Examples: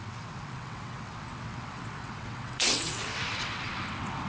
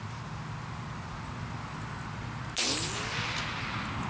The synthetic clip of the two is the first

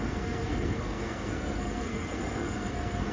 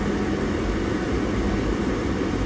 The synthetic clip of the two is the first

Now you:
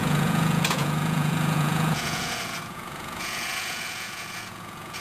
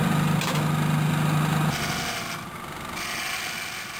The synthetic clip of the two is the first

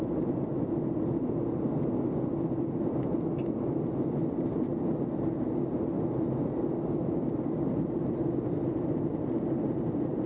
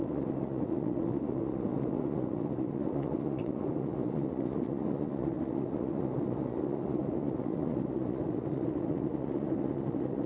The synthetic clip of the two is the second